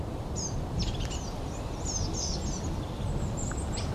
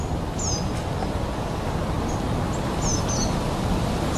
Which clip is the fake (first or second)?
first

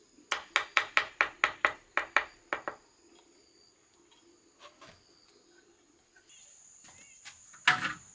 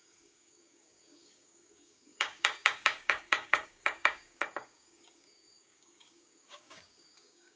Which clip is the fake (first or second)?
second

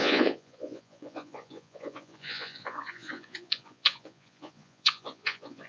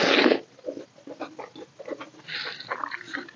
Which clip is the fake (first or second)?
first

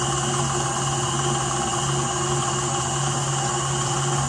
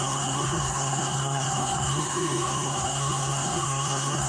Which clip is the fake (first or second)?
second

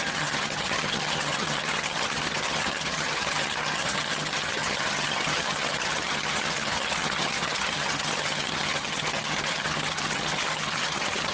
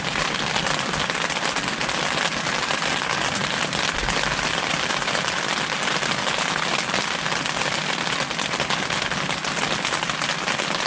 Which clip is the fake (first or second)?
first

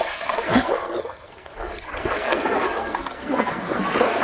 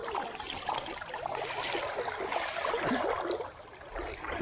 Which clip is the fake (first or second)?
first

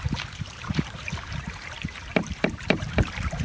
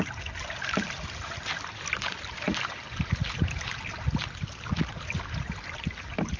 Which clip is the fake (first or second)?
first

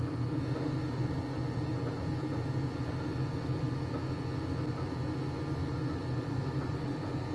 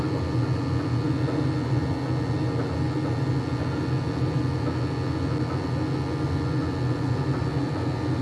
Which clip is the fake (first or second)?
first